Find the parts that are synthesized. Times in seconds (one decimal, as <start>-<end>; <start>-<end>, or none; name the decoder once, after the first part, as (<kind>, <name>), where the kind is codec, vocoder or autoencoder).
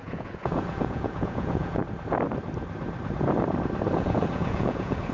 0.0-1.8 (vocoder, Vocos); 3.9-5.1